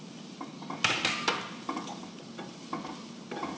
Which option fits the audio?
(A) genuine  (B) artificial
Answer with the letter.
A